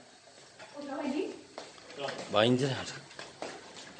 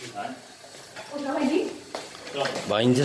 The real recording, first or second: first